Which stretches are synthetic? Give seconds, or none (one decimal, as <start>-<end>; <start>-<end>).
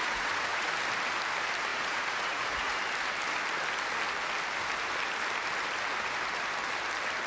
0.0-0.7; 1.7-2.8